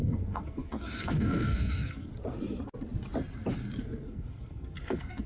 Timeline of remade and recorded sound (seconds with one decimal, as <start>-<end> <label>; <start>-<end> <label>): 0.0-2.1 remade; 2.1-3.8 recorded; 3.8-5.3 remade